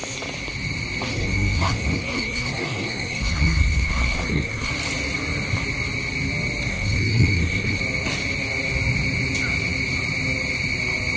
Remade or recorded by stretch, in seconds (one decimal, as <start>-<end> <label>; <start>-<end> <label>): 0.0-1.1 recorded; 1.1-4.7 remade; 4.7-6.7 recorded; 6.7-7.8 remade; 7.8-11.2 recorded

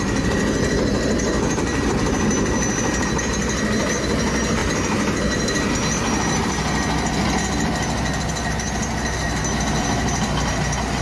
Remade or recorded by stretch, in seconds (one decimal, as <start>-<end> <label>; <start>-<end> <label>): 0.0-4.6 recorded; 4.6-5.7 remade; 5.7-11.0 recorded

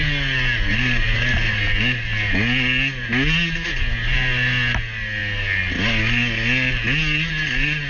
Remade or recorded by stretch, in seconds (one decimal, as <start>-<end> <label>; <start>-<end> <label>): 0.0-7.9 recorded